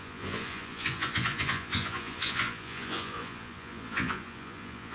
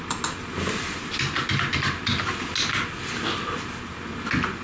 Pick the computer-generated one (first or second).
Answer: first